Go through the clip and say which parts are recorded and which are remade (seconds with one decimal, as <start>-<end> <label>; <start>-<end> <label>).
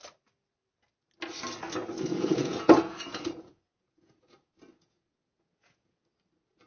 0.0-2.1 recorded; 2.1-6.1 remade; 6.1-6.7 recorded